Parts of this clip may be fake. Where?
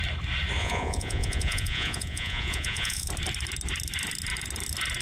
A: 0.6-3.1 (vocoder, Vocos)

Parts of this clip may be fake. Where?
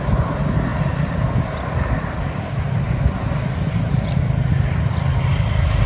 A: none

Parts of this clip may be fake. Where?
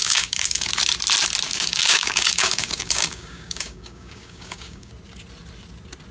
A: 0.0-0.7 (codec, DAC); 1.5-4.9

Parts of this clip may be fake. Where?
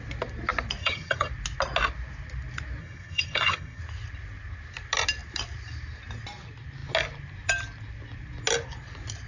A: 0.8-1.3 (vocoder, HiFi-GAN); 2.8-3.8